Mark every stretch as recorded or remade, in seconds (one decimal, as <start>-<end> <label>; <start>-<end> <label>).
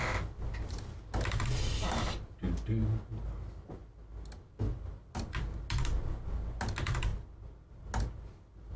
0.0-8.8 recorded